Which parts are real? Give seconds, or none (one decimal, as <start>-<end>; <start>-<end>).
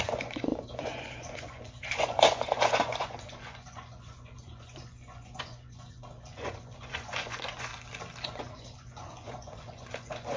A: 7.7-8.2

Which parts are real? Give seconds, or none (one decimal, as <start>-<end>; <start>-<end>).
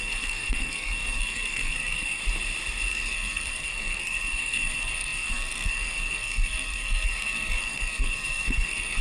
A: 2.2-2.9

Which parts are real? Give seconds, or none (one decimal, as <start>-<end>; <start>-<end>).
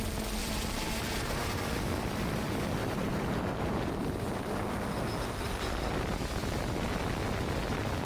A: 0.0-0.4; 1.6-2.8; 4.5-8.0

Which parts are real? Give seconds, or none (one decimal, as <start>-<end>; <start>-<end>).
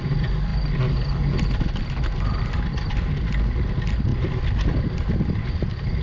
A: 0.0-6.0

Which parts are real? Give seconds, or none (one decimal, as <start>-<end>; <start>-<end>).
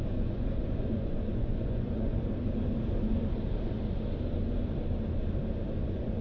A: 2.1-5.8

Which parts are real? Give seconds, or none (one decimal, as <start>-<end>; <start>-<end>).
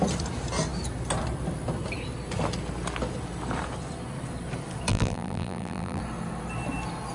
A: 0.0-4.9; 6.0-7.1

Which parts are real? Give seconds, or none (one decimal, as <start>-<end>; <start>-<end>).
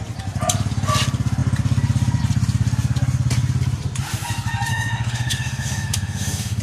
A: 0.0-4.7